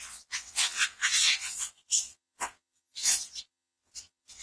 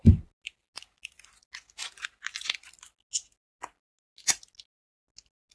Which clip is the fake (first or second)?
first